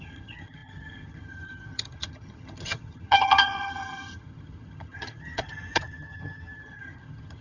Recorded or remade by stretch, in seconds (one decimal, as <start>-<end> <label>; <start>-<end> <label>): 0.0-7.4 remade